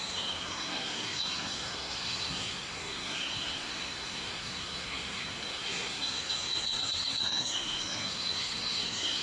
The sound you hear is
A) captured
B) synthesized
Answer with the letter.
B